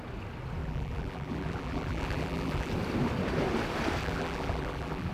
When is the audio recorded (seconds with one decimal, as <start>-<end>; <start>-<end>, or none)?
0.0-0.6; 2.7-4.0